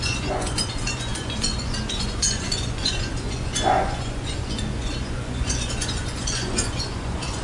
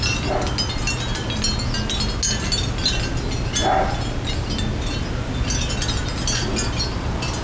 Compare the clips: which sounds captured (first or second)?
second